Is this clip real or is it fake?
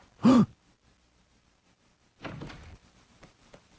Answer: fake